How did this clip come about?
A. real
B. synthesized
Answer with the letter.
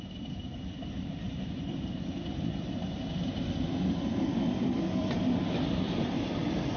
B